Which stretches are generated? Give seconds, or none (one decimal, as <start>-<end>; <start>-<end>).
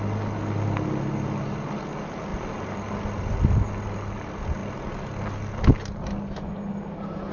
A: none